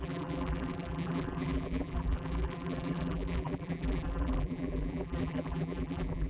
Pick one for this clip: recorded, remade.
remade